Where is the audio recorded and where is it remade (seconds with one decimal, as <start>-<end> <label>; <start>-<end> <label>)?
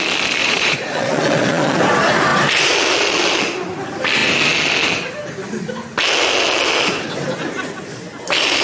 0.0-0.4 recorded; 0.4-1.8 remade; 1.8-8.6 recorded